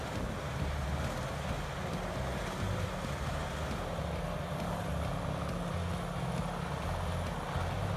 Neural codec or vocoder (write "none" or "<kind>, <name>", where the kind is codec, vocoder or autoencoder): none